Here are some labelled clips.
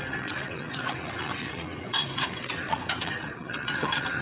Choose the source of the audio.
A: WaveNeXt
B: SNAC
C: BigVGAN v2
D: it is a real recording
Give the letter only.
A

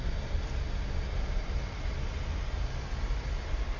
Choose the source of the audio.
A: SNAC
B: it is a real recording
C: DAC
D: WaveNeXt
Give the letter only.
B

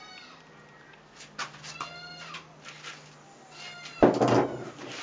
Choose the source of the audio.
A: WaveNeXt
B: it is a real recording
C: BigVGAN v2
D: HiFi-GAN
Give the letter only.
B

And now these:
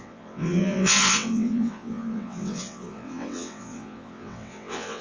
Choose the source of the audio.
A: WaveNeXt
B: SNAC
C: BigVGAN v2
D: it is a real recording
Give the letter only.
A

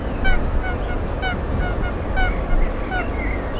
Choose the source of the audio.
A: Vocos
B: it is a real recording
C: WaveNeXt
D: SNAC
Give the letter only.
B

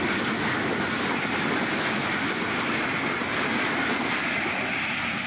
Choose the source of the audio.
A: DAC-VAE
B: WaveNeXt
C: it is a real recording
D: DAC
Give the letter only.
C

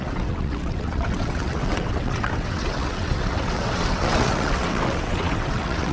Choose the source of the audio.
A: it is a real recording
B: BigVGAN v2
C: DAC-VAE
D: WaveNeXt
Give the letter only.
D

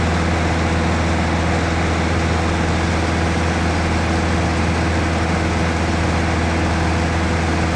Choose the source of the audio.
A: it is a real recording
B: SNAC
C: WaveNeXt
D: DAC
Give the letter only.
A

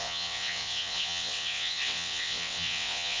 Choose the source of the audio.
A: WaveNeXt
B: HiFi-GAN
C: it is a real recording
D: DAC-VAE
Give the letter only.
A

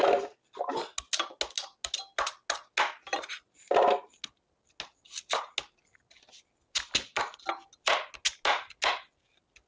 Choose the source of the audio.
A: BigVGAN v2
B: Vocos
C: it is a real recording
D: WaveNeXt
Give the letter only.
C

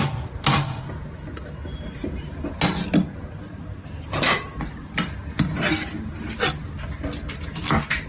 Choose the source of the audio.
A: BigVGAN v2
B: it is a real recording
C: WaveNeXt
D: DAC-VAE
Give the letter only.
B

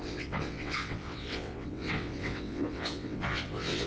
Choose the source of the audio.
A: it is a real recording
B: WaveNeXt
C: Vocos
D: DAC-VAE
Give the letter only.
B